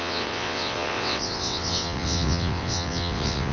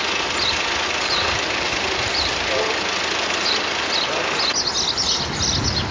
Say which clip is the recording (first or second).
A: second